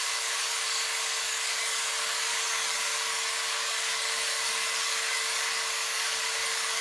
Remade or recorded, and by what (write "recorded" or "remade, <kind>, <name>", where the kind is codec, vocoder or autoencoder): remade, codec, DAC